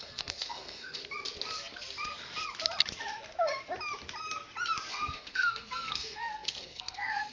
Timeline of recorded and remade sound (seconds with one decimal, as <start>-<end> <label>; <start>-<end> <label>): 0.0-1.0 remade; 1.0-4.9 recorded; 4.9-7.3 remade